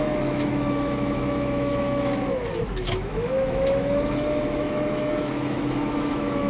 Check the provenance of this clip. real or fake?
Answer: fake